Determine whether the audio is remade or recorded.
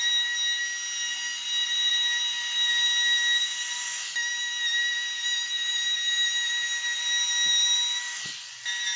recorded